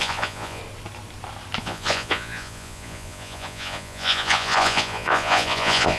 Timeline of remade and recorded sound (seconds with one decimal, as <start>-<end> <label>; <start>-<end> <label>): 0.0-0.6 remade; 0.6-1.6 recorded; 1.6-6.0 remade